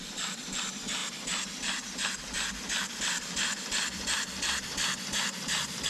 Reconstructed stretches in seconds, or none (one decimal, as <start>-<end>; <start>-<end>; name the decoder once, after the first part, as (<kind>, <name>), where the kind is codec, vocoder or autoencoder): 0.0-1.0 (vocoder, BigVGAN v2); 3.0-5.9